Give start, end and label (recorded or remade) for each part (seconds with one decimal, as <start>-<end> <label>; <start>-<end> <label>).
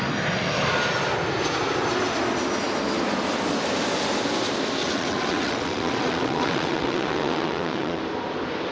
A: 0.0-4.8 recorded; 4.8-8.0 remade; 8.0-8.7 recorded